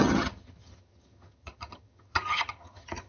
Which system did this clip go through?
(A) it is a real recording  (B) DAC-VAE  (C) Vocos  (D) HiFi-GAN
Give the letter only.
D